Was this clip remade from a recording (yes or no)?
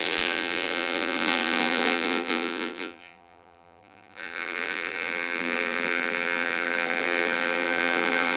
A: yes